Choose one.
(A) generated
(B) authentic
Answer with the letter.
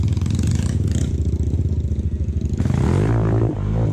B